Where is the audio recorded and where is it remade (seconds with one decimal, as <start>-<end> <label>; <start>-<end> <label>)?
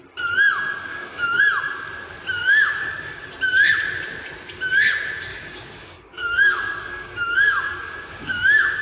0.0-0.9 recorded; 0.9-1.4 remade; 1.4-2.4 recorded; 2.4-3.3 remade; 3.3-5.3 recorded; 5.3-8.8 remade